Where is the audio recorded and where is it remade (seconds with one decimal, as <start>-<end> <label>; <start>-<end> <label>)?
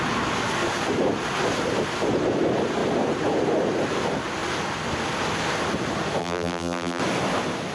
0.0-6.2 recorded; 6.2-7.0 remade; 7.0-7.7 recorded